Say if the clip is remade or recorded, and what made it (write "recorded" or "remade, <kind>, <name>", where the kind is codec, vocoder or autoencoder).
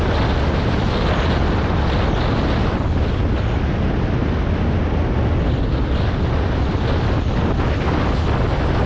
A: recorded